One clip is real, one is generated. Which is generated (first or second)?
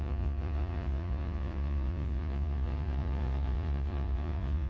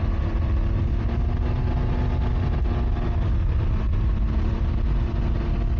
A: first